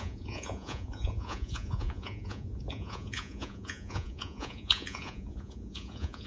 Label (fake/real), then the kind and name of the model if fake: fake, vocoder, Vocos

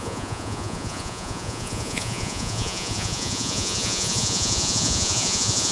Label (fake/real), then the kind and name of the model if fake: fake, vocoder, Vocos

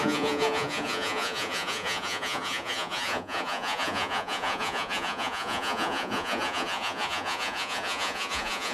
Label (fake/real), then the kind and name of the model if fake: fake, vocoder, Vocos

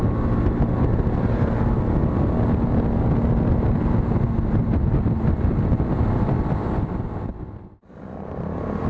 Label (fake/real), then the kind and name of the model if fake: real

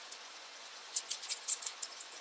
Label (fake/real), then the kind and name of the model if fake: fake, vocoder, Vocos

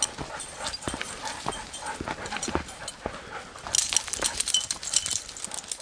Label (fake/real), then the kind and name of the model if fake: real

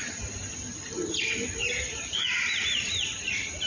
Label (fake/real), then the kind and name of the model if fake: real